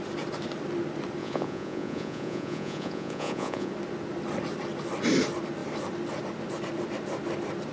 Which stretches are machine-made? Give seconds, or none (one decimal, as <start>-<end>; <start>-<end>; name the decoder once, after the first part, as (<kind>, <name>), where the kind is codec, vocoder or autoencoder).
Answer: 1.2-3.7 (vocoder, Vocos)